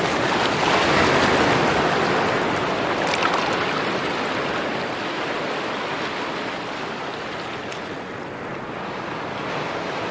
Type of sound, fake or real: real